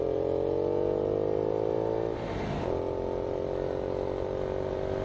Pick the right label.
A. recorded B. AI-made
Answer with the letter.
B